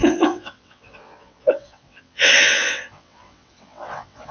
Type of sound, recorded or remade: remade